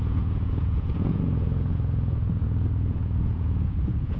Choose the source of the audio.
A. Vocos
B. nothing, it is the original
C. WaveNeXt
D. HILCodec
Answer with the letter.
A